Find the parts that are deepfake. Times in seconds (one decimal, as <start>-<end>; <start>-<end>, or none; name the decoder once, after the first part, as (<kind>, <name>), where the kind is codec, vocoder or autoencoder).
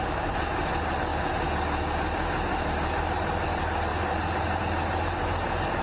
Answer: none